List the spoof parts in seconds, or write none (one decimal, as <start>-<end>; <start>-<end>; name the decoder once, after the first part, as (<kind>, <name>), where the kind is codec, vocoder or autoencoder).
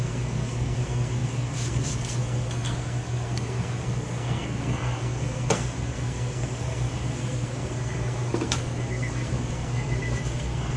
0.0-10.8 (codec, SNAC)